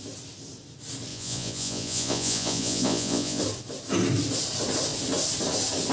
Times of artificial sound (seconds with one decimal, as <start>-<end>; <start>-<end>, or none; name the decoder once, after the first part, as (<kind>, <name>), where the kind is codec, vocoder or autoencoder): 1.1-3.4 (vocoder, Vocos)